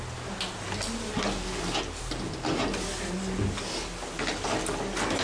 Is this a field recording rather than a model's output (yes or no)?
yes